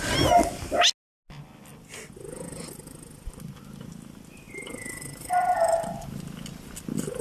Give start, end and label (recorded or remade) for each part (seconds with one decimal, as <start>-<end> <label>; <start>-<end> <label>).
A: 0.0-7.2 recorded